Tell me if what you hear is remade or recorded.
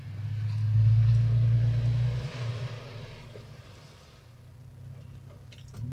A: recorded